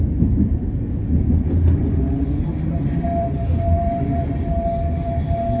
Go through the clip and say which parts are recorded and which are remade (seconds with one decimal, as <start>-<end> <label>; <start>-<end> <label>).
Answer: 0.0-5.6 recorded